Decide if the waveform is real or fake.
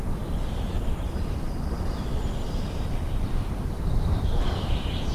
fake